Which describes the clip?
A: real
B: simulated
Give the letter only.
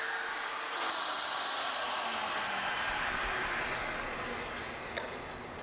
A